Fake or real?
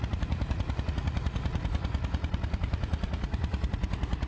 fake